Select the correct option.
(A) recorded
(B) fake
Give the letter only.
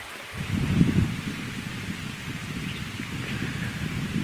A